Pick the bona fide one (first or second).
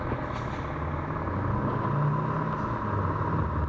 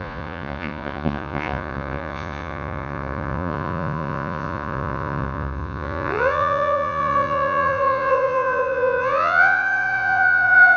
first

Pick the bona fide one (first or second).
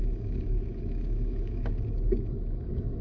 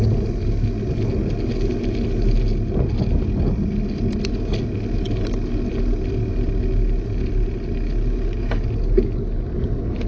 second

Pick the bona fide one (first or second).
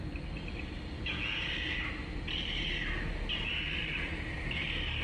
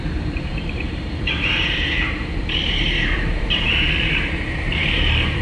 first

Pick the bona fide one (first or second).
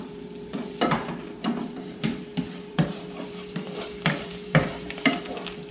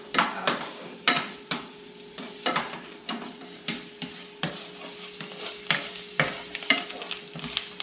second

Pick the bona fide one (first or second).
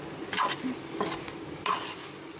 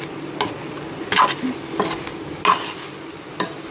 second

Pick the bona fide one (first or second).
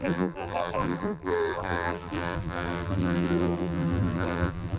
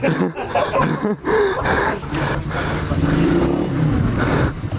second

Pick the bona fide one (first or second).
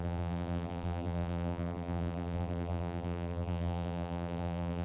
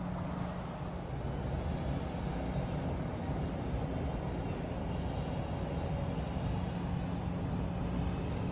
second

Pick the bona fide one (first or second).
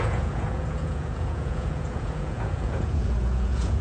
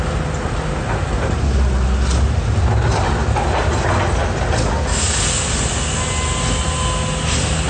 second